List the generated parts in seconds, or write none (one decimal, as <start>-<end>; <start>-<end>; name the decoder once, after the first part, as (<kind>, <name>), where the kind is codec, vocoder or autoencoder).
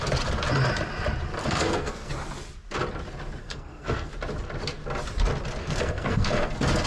1.4-2.1 (codec, SNAC); 3.4-4.1; 5.6-6.5